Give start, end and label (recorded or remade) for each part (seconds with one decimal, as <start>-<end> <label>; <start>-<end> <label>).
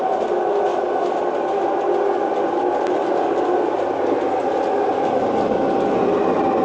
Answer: 0.0-6.6 recorded